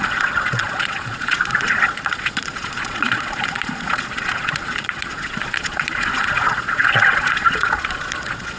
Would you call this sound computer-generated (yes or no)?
yes